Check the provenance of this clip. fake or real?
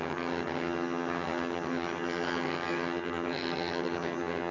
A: fake